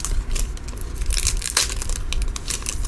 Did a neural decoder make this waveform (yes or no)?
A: no